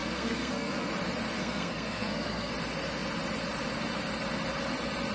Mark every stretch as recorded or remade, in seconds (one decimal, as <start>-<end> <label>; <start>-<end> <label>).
0.0-0.9 remade; 0.9-1.4 recorded; 1.4-2.5 remade; 2.5-5.1 recorded